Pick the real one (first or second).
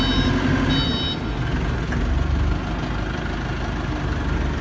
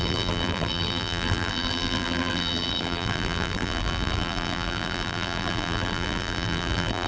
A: first